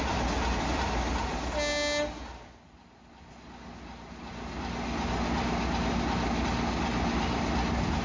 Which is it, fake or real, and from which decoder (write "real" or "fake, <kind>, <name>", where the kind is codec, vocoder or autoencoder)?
real